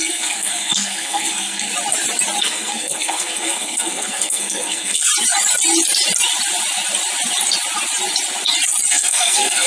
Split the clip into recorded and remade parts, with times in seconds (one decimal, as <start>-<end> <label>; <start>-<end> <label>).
0.0-1.7 remade; 1.7-2.4 recorded; 2.4-5.1 remade; 5.1-8.9 recorded; 8.9-9.7 remade